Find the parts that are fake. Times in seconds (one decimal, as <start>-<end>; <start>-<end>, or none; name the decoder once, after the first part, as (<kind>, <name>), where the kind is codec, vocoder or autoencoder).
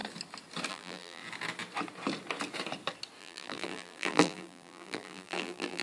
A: 0.7-1.2 (vocoder, BigVGAN v2); 3.2-5.8